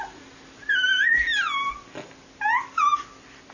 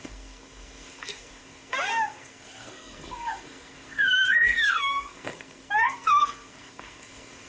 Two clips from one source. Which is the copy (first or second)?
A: second